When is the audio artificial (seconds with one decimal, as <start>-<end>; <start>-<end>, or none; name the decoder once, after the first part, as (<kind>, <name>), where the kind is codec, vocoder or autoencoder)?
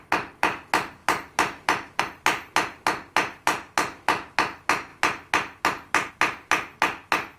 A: none